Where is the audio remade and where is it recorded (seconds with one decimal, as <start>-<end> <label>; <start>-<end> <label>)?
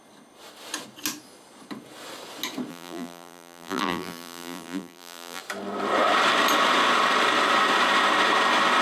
0.0-2.7 recorded; 2.7-5.4 remade; 5.4-8.8 recorded